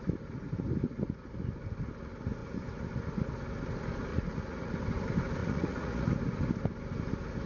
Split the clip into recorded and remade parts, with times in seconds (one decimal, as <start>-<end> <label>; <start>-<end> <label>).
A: 0.0-4.1 recorded; 4.1-4.7 remade; 4.7-5.4 recorded; 5.4-6.1 remade; 6.1-7.5 recorded